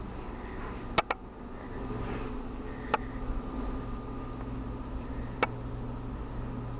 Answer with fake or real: real